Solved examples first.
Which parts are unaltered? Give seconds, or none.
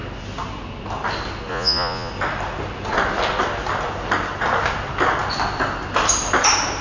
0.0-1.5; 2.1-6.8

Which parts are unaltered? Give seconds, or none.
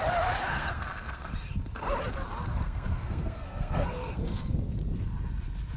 0.0-0.5; 1.3-2.5; 4.7-5.8